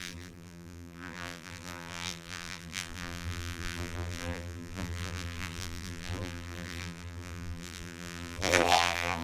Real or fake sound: fake